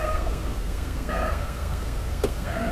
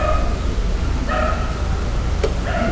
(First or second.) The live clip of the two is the second